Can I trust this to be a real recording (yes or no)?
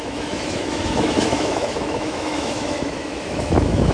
no